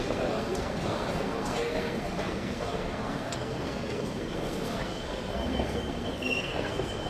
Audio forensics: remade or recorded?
remade